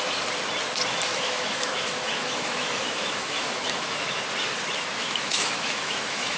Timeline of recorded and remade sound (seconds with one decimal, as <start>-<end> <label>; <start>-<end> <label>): 0.0-1.1 recorded; 1.1-4.2 remade; 4.2-5.0 recorded; 5.0-6.4 remade